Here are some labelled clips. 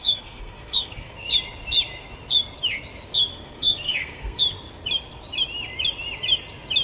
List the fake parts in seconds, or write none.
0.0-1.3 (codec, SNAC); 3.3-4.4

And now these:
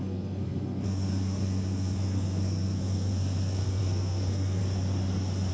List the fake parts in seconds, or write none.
0.0-4.6 (codec, SNAC)

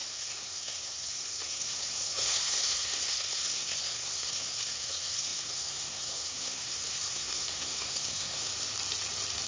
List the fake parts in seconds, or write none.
0.0-8.5 (codec, SNAC)

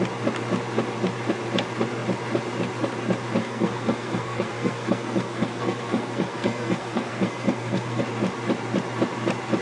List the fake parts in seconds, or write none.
3.4-8.0 (codec, SNAC)

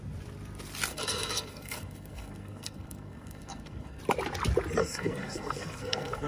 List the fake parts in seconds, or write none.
0.9-4.0 (codec, SNAC); 4.8-6.3

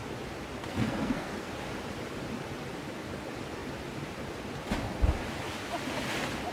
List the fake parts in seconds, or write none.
0.6-1.5 (codec, SNAC)